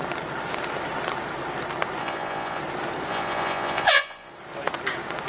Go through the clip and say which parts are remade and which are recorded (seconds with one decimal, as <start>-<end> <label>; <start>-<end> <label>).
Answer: 0.0-2.0 recorded; 2.0-2.6 remade; 2.6-3.1 recorded; 3.1-4.3 remade; 4.3-5.3 recorded